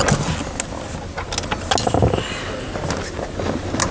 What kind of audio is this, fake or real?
real